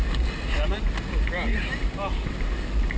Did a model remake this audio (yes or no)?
no